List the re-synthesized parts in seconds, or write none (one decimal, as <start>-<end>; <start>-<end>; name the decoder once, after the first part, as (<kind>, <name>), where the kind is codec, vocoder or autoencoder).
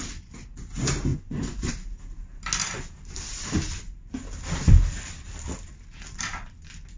1.1-1.7 (vocoder, Vocos)